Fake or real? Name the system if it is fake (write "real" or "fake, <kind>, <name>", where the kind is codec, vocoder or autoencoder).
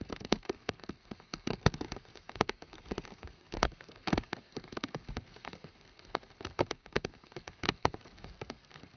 fake, codec, SNAC